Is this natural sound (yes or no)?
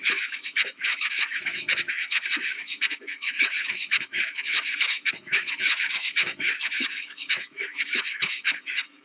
no